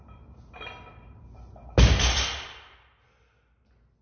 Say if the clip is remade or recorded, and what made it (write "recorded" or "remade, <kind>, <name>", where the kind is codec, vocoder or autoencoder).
recorded